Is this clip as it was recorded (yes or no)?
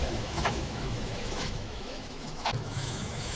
no